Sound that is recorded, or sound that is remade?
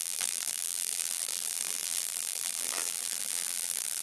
remade